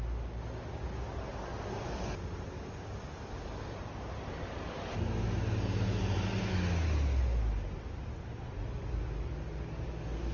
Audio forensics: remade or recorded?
recorded